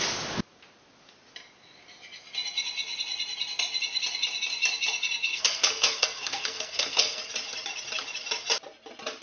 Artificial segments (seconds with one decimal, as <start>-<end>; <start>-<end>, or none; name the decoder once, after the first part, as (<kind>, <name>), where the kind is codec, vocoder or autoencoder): 5.3-7.2 (codec, SNAC)